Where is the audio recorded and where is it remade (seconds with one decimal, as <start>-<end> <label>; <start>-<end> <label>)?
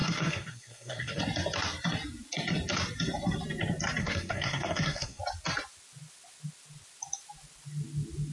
0.0-1.2 remade; 1.2-4.0 recorded; 4.0-5.2 remade; 5.2-8.3 recorded